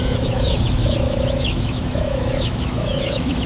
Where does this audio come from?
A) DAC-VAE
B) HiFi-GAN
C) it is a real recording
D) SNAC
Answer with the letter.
A